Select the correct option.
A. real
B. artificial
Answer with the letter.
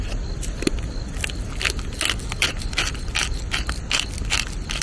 A